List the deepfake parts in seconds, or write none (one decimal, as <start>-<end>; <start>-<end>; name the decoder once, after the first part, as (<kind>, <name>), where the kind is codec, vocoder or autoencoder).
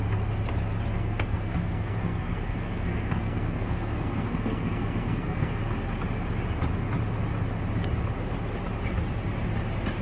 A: 0.9-5.6 (codec, SNAC)